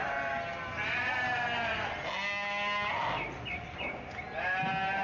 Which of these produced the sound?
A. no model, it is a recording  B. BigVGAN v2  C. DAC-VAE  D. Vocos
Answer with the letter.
A